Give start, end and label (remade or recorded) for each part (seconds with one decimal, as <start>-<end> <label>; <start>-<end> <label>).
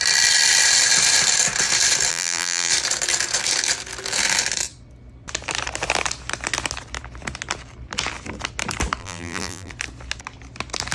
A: 0.0-2.1 recorded; 2.1-2.7 remade; 2.7-9.0 recorded; 9.0-9.7 remade; 9.7-10.9 recorded